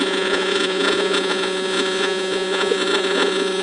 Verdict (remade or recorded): remade